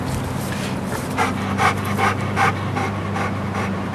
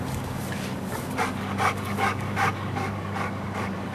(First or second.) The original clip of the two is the first